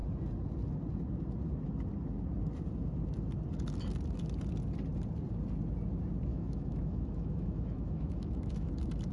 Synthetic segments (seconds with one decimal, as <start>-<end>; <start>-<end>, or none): 6.3-8.7